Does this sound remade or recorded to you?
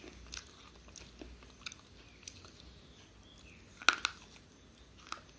recorded